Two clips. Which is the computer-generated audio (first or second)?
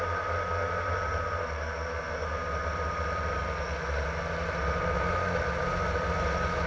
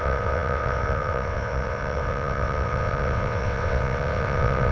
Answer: second